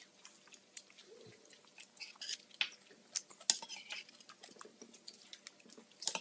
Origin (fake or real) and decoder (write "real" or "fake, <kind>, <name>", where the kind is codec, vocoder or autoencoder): real